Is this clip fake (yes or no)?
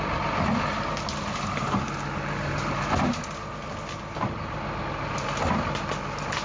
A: no